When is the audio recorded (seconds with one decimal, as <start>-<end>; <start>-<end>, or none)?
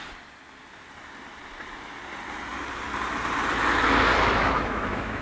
0.0-4.4